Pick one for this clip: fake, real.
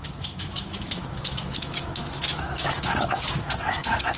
fake